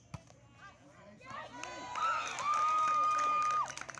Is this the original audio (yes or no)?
yes